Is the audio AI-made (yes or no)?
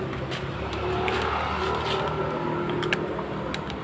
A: no